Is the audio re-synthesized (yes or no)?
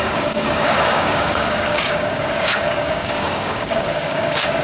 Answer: yes